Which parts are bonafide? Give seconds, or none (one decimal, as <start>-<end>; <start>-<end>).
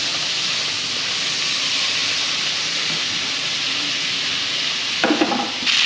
0.0-5.9